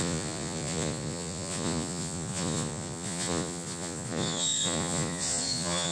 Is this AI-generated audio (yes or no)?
yes